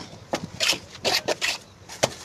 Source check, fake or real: fake